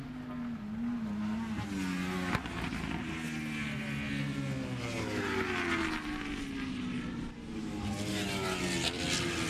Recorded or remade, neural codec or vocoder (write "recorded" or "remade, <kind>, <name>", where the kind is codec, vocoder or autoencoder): recorded